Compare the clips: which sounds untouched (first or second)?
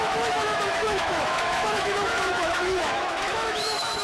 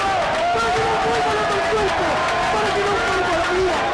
second